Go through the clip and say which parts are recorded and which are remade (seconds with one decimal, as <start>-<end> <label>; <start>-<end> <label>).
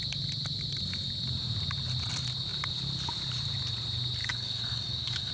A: 0.0-4.2 recorded; 4.2-5.3 remade